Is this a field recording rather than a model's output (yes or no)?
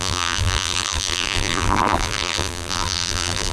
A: no